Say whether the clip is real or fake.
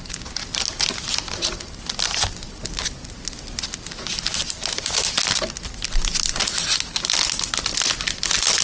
real